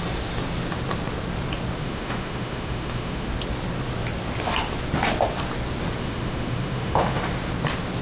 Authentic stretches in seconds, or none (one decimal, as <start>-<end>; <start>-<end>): 0.0-1.8; 3.3-6.0; 7.2-8.0